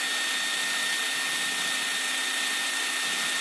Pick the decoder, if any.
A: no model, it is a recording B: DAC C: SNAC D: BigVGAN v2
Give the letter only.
A